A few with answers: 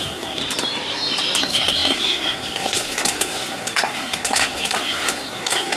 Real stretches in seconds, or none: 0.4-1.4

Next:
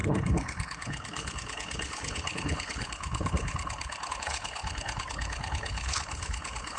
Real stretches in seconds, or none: none

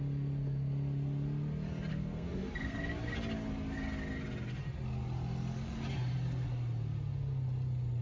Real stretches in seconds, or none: 0.0-1.9; 2.8-8.0

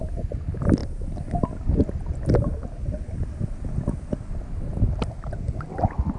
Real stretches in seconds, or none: 0.0-6.2